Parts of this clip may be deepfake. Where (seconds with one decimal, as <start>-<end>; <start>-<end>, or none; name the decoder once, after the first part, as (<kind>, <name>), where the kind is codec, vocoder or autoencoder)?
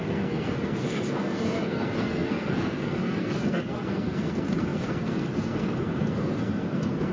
0.0-7.1 (codec, SNAC)